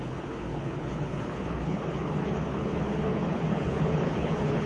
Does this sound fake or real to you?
fake